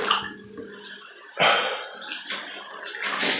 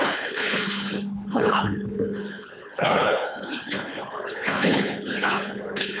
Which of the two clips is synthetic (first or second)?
second